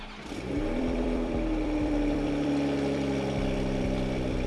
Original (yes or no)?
no